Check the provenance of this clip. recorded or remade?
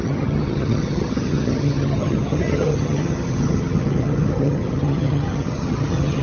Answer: remade